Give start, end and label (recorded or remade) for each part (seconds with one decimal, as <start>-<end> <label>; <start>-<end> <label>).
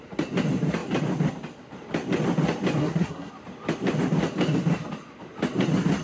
0.0-2.8 recorded; 2.8-3.3 remade; 3.3-6.0 recorded